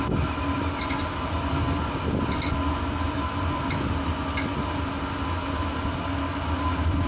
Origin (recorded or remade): recorded